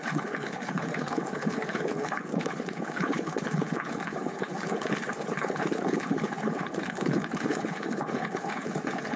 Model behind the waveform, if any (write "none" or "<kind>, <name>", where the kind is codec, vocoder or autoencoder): codec, HILCodec